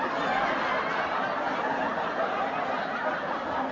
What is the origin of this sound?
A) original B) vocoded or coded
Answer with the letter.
A